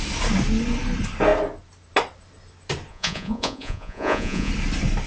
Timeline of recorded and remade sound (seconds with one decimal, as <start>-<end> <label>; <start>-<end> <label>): 0.0-2.9 recorded; 2.9-4.5 remade; 4.5-5.1 recorded